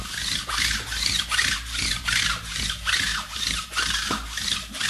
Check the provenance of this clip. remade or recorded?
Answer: recorded